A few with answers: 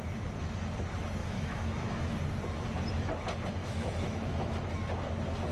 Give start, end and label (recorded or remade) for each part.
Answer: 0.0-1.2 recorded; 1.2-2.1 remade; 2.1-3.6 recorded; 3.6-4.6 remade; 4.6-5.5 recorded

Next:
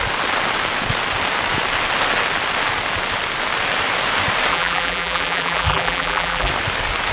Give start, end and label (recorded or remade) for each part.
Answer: 0.0-4.5 recorded; 4.5-6.5 remade; 6.5-7.1 recorded

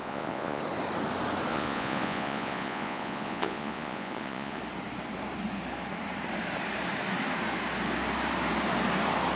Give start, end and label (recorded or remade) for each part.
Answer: 0.0-0.6 remade; 0.6-1.5 recorded; 1.5-4.6 remade; 4.6-9.4 recorded

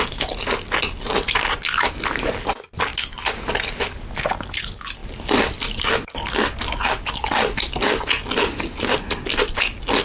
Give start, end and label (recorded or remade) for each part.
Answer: 0.0-10.0 recorded

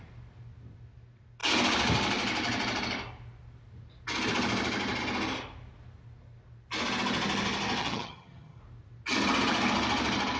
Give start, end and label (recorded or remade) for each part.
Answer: 0.0-7.8 recorded; 7.8-8.6 remade; 8.6-10.4 recorded